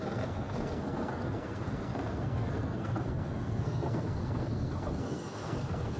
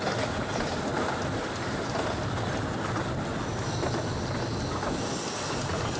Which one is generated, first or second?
first